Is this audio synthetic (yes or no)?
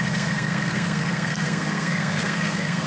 yes